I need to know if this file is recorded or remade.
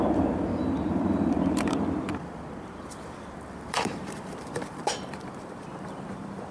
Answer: remade